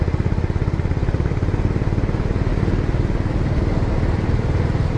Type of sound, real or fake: real